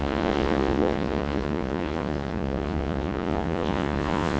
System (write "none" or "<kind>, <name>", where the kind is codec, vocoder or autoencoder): vocoder, Vocos